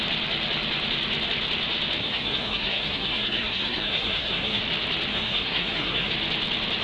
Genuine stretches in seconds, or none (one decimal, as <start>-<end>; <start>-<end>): 0.0-2.0; 4.6-5.1; 6.1-6.8